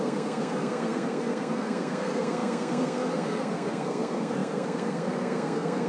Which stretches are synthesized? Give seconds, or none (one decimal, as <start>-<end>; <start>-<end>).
0.0-5.9